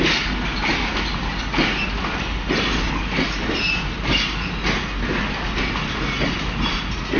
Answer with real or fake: real